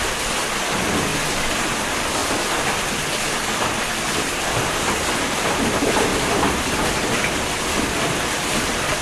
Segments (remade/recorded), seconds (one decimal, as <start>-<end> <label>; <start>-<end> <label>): 0.0-1.1 remade; 1.1-1.7 recorded; 1.7-6.1 remade; 6.1-8.0 recorded; 8.0-9.0 remade